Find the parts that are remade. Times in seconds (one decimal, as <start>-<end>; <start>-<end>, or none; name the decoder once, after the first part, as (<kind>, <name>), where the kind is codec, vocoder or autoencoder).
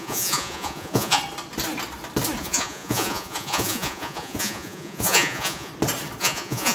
0.0-1.2 (vocoder, Vocos); 2.4-5.7; 6.2-6.7